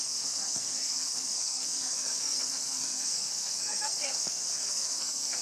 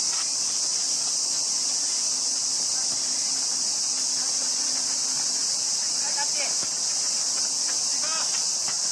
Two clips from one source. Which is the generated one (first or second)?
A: first